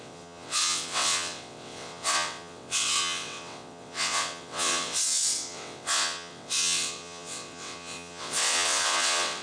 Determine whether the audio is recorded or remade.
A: remade